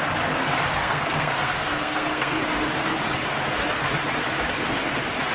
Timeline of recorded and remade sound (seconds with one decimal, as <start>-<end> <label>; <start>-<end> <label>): 0.0-0.8 recorded; 0.8-2.4 remade; 2.4-5.3 recorded